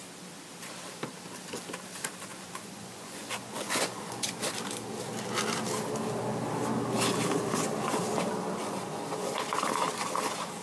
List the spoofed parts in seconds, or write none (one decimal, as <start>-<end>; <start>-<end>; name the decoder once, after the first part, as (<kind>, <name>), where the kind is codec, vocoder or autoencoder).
2.3-4.5 (vocoder, Vocos); 8.6-9.4